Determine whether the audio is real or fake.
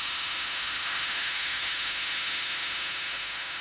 fake